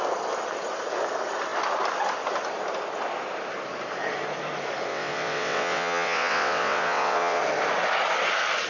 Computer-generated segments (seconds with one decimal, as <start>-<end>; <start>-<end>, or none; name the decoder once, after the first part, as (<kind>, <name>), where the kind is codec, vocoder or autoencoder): 4.9-7.4 (vocoder, WaveNeXt)